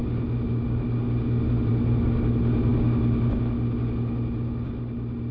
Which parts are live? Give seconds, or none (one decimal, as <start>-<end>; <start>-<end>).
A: 0.0-5.3